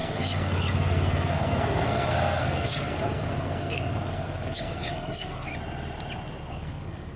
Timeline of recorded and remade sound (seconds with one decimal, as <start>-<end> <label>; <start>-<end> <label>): 0.0-5.5 remade; 5.5-6.5 recorded; 6.5-7.2 remade